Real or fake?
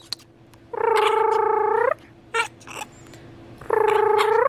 real